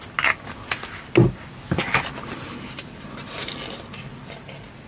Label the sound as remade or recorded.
recorded